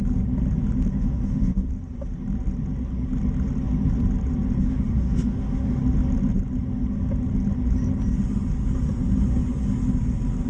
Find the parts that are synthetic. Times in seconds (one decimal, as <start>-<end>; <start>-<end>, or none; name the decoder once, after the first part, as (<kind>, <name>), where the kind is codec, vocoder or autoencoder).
0.9-1.7 (autoencoder, DAC-VAE); 4.6-5.8